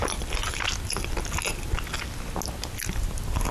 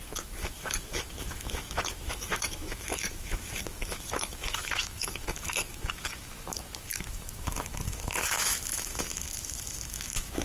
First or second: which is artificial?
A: second